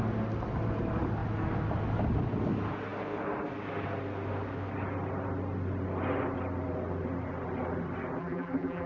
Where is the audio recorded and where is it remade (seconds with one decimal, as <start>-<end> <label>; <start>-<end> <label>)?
0.0-8.2 recorded; 8.2-8.9 remade